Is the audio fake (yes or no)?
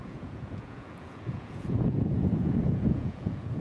yes